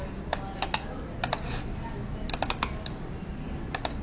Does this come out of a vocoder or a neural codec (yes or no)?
no